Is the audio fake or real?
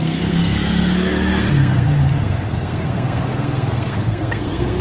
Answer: fake